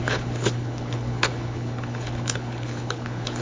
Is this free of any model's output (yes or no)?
no